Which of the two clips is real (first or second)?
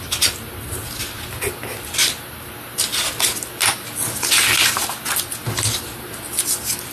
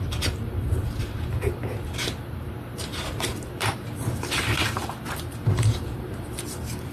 first